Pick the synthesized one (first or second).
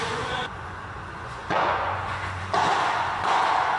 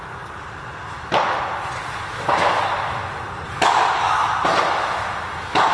first